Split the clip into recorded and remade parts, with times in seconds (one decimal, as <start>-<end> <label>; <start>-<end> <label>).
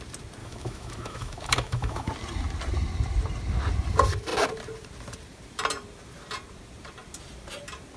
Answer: 0.0-0.4 recorded; 0.4-2.1 remade; 2.1-8.0 recorded